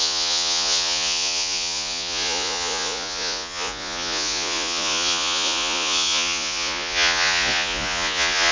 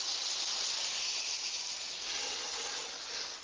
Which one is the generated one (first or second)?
first